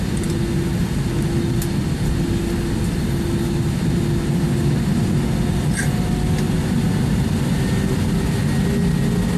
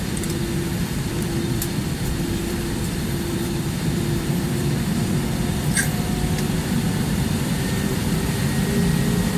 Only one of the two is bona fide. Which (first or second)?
first